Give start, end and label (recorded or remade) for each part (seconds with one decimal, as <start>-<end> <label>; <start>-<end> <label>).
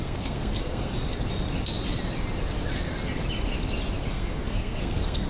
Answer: 0.0-0.9 remade; 0.9-4.1 recorded; 4.1-5.3 remade